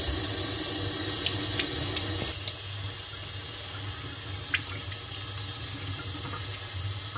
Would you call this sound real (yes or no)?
yes